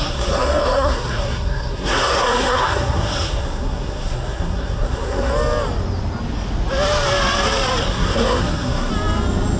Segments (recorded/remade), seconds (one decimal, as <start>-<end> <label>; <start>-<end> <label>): 0.0-5.3 remade; 5.3-7.8 recorded; 7.8-8.9 remade; 8.9-9.6 recorded